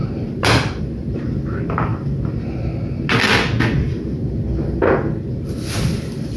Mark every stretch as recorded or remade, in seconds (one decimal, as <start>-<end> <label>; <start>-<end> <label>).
0.0-1.9 remade; 1.9-5.3 recorded; 5.3-6.4 remade